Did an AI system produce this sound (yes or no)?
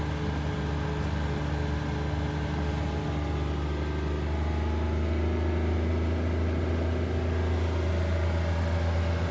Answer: no